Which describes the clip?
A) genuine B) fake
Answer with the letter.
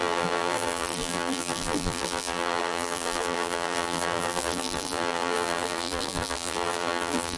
B